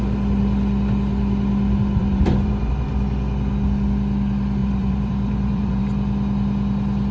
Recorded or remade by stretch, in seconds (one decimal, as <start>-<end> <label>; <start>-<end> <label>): 0.0-2.0 recorded; 2.0-2.7 remade; 2.7-4.6 recorded; 4.6-5.8 remade; 5.8-7.1 recorded